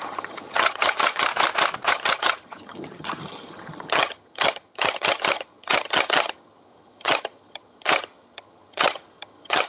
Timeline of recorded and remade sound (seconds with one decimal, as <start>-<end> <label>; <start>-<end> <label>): 0.0-1.3 remade; 1.3-1.9 recorded; 1.9-9.7 remade